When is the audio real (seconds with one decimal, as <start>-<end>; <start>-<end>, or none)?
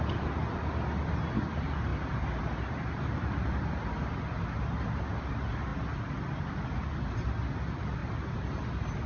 0.0-9.1